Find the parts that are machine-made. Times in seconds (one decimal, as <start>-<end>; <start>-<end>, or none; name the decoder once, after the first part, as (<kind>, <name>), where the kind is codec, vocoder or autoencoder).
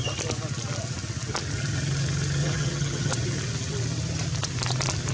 2.4-3.1 (vocoder, HiFi-GAN)